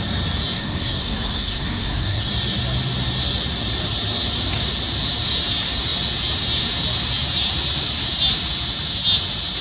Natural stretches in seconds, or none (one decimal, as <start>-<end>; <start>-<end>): 0.0-0.6; 2.3-9.6